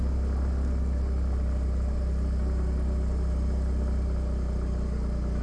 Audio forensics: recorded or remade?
recorded